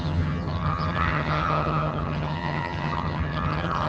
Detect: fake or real fake